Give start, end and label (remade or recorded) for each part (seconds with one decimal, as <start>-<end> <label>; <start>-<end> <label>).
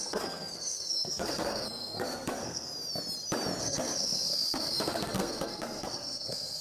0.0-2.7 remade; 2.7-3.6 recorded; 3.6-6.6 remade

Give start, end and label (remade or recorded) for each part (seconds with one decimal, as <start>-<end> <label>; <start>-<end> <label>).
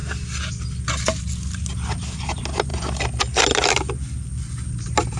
0.0-5.2 recorded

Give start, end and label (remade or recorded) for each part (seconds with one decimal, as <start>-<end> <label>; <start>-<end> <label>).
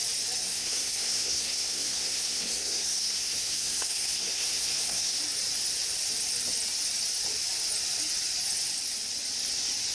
0.0-0.4 recorded; 0.4-5.2 remade; 5.2-9.9 recorded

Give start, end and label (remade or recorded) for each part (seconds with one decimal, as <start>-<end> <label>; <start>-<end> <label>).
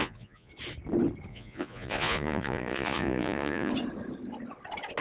0.0-0.5 remade; 0.5-1.3 recorded; 1.3-3.7 remade; 3.7-5.0 recorded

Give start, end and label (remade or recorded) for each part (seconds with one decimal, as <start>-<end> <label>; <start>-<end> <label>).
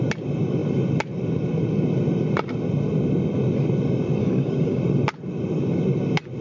0.0-4.2 recorded; 4.2-4.8 remade; 4.8-6.4 recorded